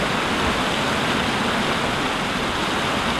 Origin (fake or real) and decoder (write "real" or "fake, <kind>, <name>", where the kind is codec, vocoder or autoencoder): real